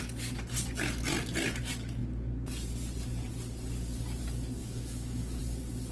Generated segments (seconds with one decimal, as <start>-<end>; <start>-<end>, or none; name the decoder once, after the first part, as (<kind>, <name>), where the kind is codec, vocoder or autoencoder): 4.6-5.4 (autoencoder, DAC-VAE)